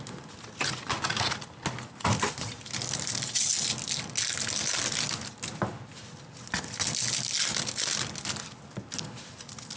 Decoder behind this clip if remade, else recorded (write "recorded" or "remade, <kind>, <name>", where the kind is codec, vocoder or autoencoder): recorded